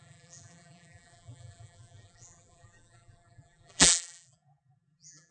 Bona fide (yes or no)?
no